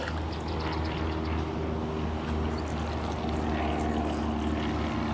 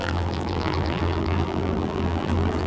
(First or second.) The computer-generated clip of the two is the second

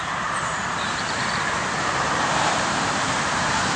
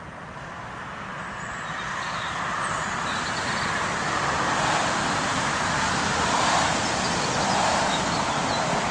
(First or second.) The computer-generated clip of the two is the first